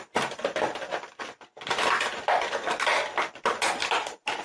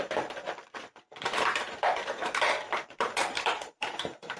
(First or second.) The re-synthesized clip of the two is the second